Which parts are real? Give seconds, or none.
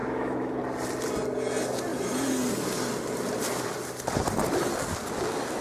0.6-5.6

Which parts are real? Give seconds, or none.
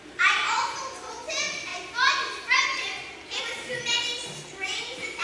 0.0-5.2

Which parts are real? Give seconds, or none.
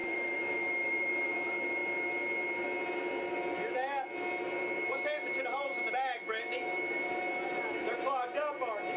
1.3-9.0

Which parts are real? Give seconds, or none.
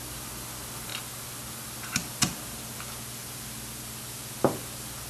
0.0-5.1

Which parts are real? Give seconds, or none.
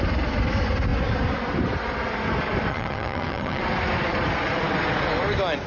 0.0-2.7; 3.6-5.7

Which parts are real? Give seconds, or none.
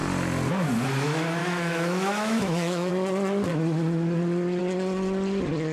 0.0-1.4; 2.9-5.7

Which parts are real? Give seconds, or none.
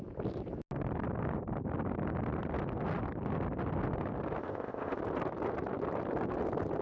0.0-4.4; 5.0-6.8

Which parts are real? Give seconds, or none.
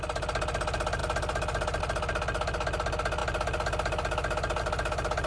0.0-5.3